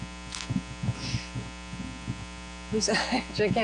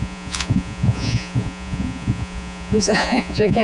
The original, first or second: first